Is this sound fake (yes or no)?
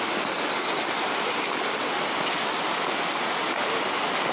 no